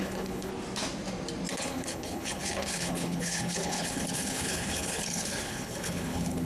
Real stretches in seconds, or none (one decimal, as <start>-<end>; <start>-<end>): 0.5-1.5